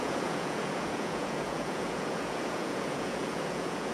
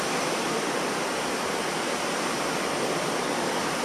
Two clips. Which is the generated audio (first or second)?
first